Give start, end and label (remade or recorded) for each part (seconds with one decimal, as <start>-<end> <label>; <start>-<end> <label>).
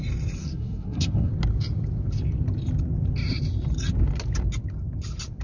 0.0-0.4 recorded; 0.4-1.3 remade; 1.3-5.4 recorded